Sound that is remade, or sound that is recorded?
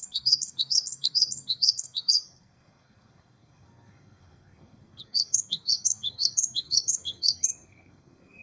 remade